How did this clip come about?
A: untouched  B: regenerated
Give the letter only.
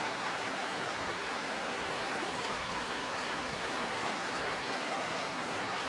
B